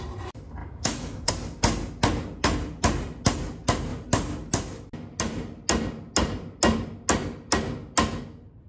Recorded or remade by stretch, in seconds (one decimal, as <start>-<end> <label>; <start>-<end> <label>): 0.0-0.6 recorded; 0.6-1.3 remade; 1.3-8.7 recorded